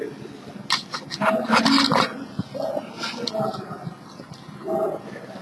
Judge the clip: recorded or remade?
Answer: recorded